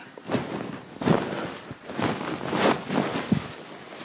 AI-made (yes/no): no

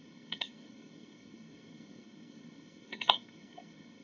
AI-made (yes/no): yes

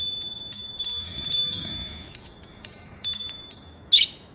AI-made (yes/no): yes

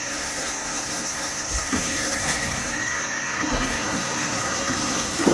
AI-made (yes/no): yes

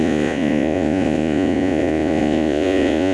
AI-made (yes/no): yes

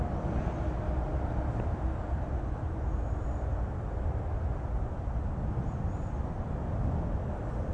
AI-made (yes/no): no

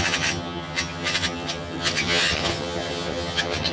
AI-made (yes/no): yes